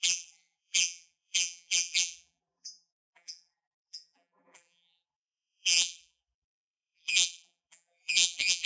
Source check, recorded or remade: remade